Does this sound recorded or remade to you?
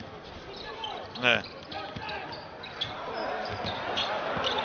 recorded